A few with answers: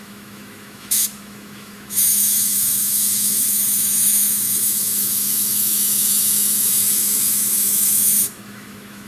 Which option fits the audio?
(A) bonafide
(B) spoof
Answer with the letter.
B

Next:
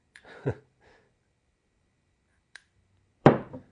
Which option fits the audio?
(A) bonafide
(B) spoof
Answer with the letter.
B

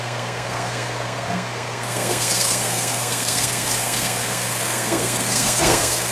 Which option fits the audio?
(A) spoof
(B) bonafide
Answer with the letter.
A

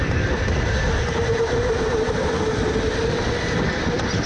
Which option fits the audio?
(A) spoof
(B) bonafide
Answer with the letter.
B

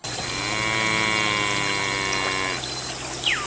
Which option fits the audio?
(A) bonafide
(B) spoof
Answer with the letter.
A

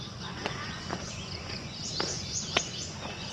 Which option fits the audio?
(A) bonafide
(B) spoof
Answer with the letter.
B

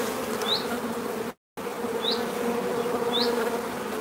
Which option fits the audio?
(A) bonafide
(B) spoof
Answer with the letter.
A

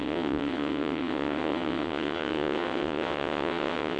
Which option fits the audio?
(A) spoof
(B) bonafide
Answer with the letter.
A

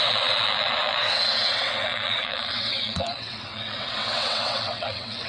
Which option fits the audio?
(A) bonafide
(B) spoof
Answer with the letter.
B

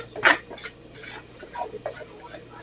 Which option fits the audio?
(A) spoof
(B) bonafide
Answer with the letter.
B